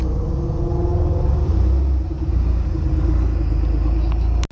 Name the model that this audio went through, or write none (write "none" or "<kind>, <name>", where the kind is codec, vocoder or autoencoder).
none